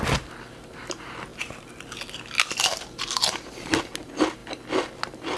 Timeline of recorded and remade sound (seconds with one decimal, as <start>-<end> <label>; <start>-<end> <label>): 0.0-5.4 recorded